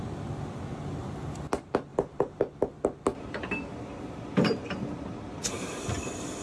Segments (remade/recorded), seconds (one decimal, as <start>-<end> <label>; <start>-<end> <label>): 0.0-1.9 recorded; 1.9-2.4 remade; 2.4-3.1 recorded; 3.1-6.4 remade